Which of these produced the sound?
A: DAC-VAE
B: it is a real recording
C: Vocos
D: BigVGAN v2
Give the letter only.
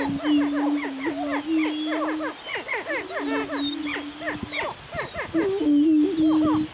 B